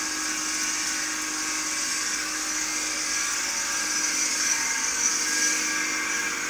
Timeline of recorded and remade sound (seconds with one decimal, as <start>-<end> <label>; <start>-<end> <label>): 0.0-1.9 recorded; 1.9-3.5 remade; 3.5-4.3 recorded; 4.3-5.1 remade; 5.1-6.5 recorded